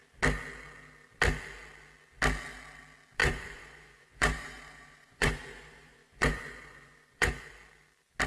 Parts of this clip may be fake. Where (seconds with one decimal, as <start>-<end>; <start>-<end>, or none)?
3.2-7.5